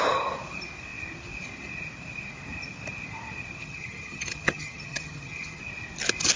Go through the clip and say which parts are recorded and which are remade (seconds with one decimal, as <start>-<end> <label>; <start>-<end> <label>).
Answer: 0.0-3.6 recorded; 3.6-5.6 remade; 5.6-6.4 recorded